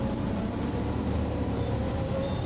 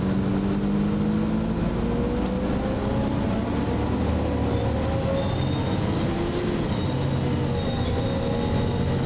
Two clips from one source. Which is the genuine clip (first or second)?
second